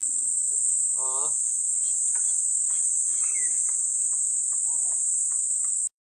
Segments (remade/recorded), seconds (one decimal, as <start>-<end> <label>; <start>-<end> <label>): 0.0-0.9 remade; 0.9-1.5 recorded; 1.5-3.9 remade; 3.9-5.5 recorded; 5.5-6.1 remade